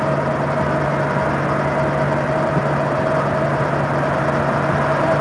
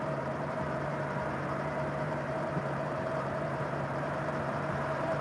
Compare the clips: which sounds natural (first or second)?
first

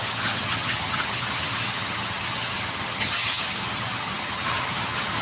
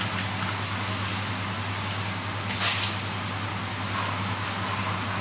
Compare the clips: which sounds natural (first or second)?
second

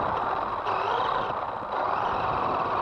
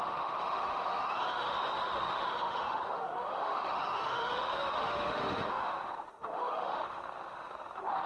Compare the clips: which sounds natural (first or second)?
first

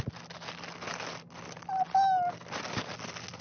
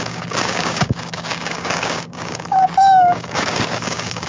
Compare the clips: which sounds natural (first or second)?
first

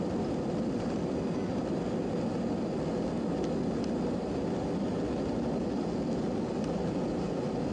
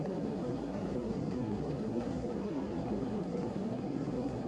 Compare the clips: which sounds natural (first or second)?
first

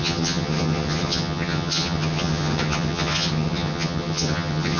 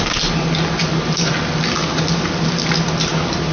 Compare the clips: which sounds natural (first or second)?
second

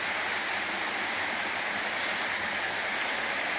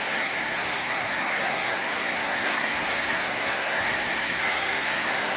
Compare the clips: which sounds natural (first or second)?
first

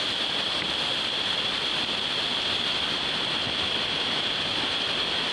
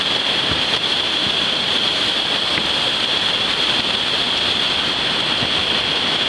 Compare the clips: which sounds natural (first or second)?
second